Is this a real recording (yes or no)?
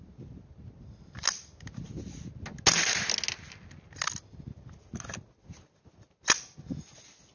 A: yes